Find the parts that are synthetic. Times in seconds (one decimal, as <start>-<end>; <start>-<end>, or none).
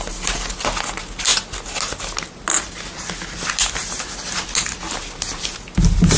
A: none